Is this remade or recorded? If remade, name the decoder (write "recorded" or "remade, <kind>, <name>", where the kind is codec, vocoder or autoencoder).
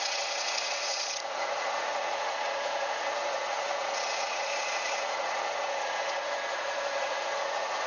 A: remade, vocoder, Vocos